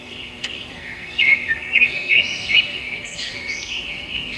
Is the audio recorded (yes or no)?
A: no